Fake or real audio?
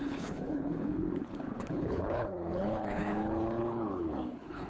fake